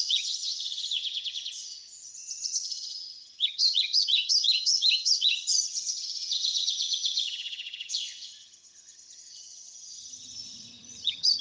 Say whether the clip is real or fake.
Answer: fake